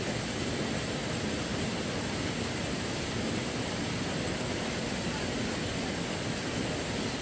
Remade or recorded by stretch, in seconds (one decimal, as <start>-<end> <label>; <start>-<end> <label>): 0.0-7.2 recorded